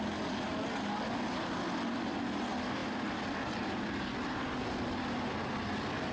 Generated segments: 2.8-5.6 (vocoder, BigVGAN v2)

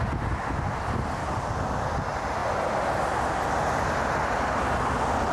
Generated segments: none

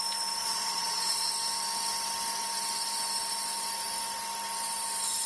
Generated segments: 0.4-1.3 (vocoder, Vocos)